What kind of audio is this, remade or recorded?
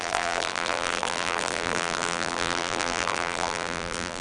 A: remade